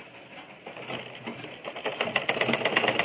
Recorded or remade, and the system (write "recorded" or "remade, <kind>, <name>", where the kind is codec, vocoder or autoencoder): recorded